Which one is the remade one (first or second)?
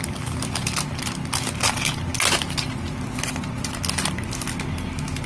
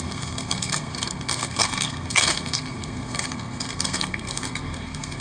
second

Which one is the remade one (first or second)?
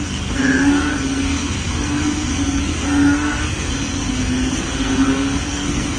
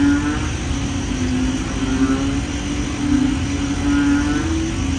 first